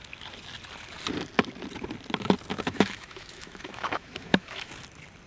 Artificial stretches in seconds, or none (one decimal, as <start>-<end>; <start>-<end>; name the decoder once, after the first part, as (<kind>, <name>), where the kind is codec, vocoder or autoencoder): 2.5-4.7 (autoencoder, DAC-VAE)